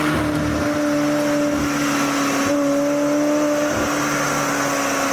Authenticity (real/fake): real